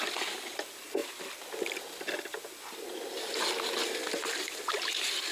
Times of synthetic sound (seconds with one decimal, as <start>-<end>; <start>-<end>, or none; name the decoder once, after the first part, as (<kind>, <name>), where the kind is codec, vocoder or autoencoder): none